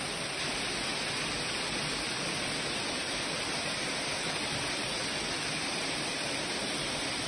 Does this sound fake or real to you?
real